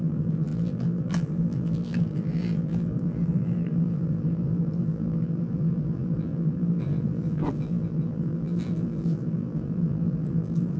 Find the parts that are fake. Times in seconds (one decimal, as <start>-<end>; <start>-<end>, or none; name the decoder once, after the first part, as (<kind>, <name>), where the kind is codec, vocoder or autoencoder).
0.0-10.8 (vocoder, BigVGAN v2)